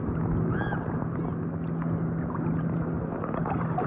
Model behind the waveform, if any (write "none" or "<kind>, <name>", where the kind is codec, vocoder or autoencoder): none